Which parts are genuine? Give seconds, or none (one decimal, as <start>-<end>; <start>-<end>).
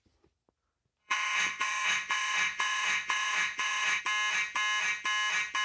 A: 0.0-1.0; 4.0-5.6